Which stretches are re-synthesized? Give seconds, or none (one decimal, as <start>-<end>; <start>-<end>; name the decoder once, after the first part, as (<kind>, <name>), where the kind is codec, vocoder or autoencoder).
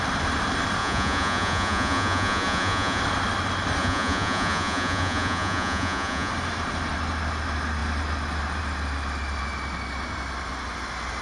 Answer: 0.8-3.0 (vocoder, Vocos); 3.8-6.3